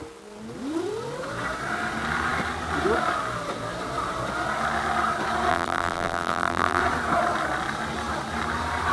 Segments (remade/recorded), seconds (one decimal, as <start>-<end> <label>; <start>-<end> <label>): 0.0-5.5 recorded; 5.5-6.8 remade; 6.8-8.9 recorded